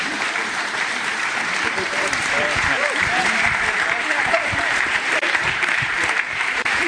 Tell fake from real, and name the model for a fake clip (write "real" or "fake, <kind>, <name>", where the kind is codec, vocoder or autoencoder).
fake, vocoder, BigVGAN v2